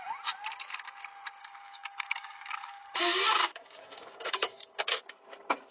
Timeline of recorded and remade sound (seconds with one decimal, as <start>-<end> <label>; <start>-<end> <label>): 0.0-1.4 recorded; 1.4-4.8 remade; 4.8-5.7 recorded